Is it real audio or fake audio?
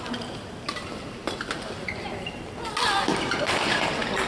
real